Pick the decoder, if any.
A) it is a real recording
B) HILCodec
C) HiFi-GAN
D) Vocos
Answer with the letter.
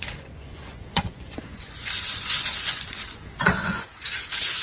D